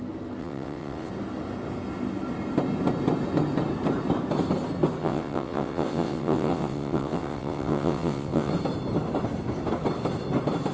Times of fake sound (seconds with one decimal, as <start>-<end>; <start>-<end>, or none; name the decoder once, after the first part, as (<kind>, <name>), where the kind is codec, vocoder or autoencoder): 0.4-1.1 (vocoder, WaveNeXt); 5.0-8.5